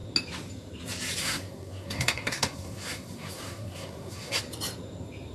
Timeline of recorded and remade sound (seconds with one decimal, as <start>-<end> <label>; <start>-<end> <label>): 0.0-1.2 recorded; 1.2-4.4 remade; 4.4-5.3 recorded